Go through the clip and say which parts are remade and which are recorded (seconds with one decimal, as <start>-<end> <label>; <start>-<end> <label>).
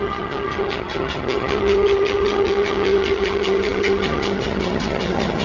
0.0-5.4 remade